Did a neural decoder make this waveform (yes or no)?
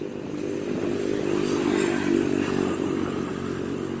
no